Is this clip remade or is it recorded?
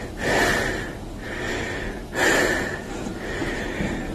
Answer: recorded